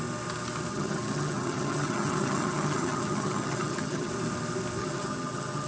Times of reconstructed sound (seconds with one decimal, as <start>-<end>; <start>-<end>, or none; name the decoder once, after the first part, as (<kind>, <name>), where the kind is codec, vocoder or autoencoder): 0.7-4.1 (vocoder, HiFi-GAN); 4.8-5.7